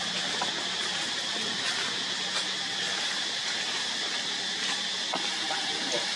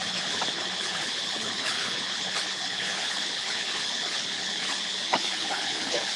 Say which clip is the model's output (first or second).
second